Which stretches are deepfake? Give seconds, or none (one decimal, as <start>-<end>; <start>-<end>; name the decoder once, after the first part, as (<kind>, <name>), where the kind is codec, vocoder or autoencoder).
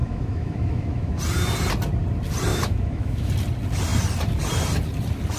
0.0-1.2 (autoencoder, DAC-VAE); 2.5-3.3